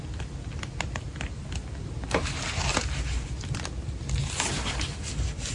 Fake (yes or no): no